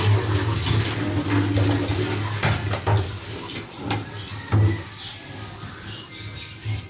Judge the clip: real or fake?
real